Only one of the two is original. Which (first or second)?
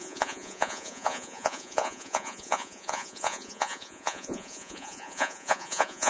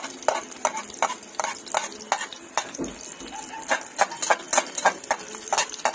second